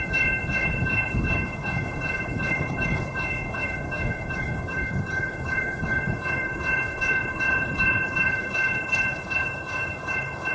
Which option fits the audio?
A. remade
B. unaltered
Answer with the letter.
A